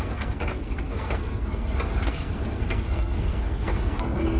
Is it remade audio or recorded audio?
remade